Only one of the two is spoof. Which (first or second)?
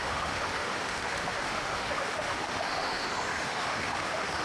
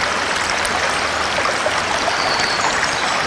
first